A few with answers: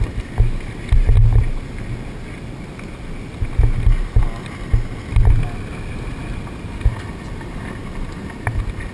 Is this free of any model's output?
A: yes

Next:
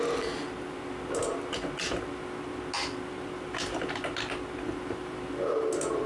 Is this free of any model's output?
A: yes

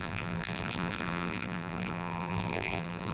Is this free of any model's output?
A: no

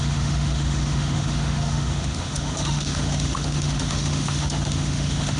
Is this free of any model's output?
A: no